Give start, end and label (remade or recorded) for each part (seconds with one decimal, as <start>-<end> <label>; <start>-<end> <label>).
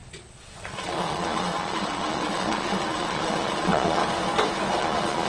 0.0-4.0 remade; 4.0-4.8 recorded; 4.8-5.3 remade